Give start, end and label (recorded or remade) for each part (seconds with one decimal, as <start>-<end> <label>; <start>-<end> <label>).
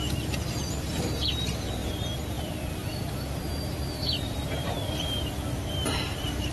0.0-1.8 remade; 1.8-2.4 recorded; 2.4-6.5 remade